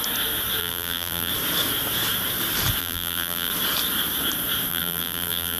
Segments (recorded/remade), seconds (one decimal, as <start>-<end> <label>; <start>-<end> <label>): 0.0-0.6 recorded; 0.6-1.3 remade; 1.3-2.8 recorded; 2.8-3.5 remade; 3.5-4.7 recorded; 4.7-5.6 remade